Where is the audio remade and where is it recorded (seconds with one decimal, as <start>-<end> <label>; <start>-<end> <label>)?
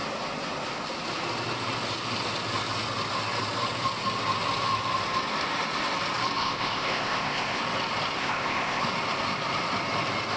0.0-6.4 recorded; 6.4-7.6 remade; 7.6-8.2 recorded; 8.2-8.8 remade; 8.8-10.4 recorded